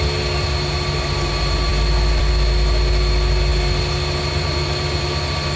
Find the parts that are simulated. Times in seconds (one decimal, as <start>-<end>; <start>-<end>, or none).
none